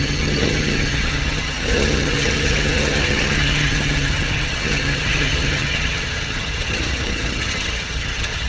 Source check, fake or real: fake